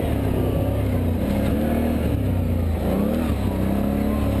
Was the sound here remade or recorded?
recorded